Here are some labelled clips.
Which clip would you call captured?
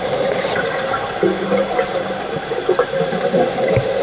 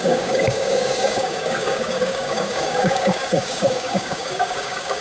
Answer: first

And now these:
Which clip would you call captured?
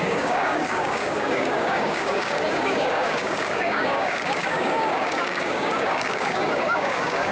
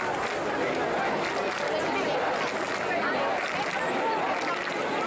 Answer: second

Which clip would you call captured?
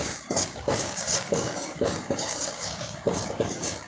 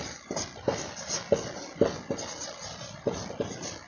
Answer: second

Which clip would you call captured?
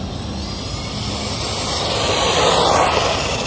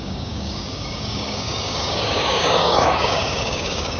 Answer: first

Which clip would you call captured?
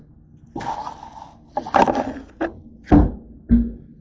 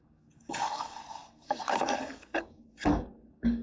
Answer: first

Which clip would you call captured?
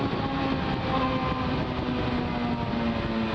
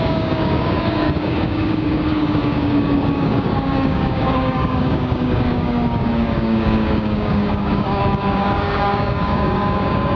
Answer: first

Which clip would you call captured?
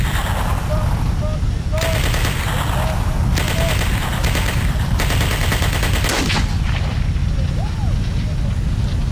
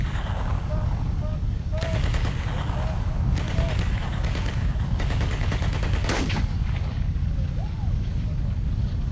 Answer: first